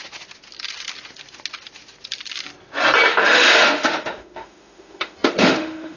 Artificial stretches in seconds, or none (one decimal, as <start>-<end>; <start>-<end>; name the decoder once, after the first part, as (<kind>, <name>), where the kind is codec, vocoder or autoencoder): 3.1-6.0 (autoencoder, DAC-VAE)